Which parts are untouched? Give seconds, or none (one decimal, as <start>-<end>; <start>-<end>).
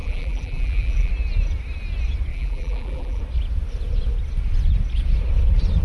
1.1-2.3; 3.2-5.8